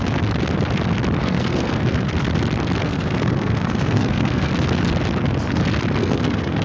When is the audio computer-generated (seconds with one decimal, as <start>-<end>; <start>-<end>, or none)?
1.2-2.1; 2.8-4.5; 6.0-6.6